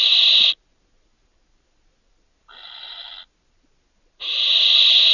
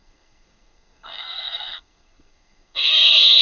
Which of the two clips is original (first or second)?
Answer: first